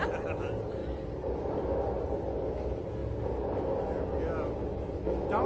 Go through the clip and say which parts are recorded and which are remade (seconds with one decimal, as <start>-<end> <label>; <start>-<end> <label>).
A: 0.0-5.5 recorded

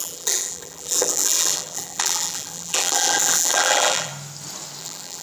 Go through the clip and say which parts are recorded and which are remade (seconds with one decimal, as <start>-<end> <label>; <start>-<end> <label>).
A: 0.0-4.1 remade; 4.1-4.8 recorded; 4.8-5.2 remade

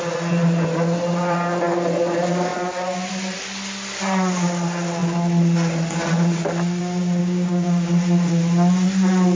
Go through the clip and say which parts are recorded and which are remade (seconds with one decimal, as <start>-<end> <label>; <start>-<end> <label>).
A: 0.0-7.2 recorded; 7.2-7.9 remade; 7.9-9.4 recorded